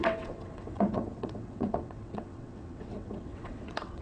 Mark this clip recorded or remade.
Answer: remade